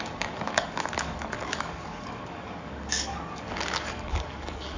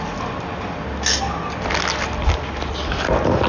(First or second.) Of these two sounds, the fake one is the first